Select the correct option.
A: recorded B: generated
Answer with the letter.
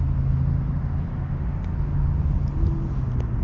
A